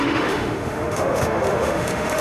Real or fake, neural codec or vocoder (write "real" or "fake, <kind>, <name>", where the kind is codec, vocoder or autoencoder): fake, autoencoder, DAC-VAE